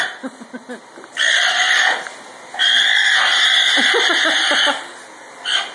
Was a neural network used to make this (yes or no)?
no